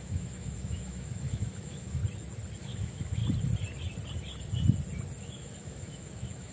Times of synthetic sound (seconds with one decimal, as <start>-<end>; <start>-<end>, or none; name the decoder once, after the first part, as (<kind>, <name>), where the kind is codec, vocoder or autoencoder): 0.0-2.0 (autoencoder, DAC-VAE); 2.6-3.2; 5.2-6.5

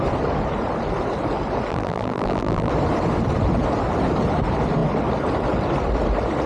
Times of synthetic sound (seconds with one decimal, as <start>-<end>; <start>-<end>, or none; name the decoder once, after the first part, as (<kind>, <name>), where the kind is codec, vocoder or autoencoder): 1.7-2.7 (vocoder, BigVGAN v2)

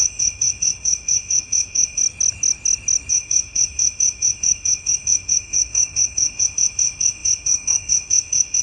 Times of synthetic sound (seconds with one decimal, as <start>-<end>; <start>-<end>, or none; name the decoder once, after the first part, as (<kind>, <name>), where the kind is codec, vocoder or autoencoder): 0.0-2.0 (autoencoder, DAC-VAE); 3.1-8.6

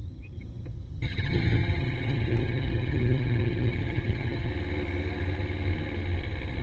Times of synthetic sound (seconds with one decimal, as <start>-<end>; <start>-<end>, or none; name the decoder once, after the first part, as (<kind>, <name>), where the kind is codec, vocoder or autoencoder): 0.0-4.5 (vocoder, HiFi-GAN)

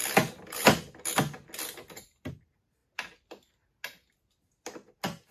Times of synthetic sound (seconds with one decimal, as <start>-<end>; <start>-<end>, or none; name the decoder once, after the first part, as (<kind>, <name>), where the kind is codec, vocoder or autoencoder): none